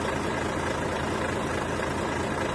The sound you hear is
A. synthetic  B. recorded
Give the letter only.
B